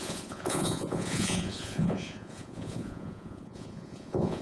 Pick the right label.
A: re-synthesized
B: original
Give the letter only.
A